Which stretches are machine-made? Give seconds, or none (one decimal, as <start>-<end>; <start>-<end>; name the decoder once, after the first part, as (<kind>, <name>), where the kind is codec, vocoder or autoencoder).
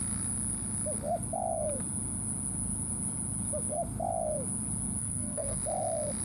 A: 5.0-5.6 (codec, SNAC)